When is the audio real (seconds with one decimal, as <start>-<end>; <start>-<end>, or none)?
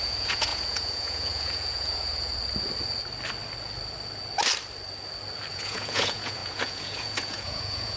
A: 2.3-5.5